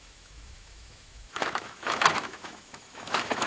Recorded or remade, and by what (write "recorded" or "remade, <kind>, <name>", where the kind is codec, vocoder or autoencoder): remade, autoencoder, DAC-VAE